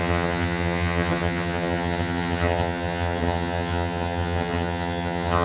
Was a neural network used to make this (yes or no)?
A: yes